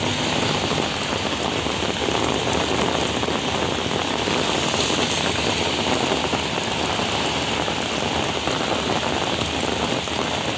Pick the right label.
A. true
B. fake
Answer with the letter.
A